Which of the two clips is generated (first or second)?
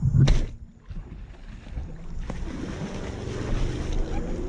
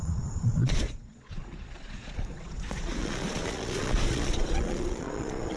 second